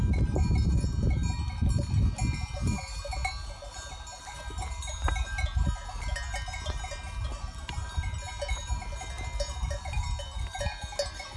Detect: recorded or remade recorded